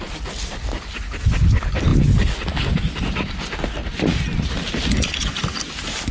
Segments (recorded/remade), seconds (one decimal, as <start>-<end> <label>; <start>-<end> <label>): 0.0-6.1 recorded